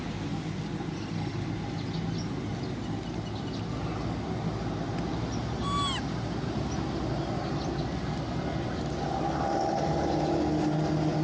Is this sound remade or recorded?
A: recorded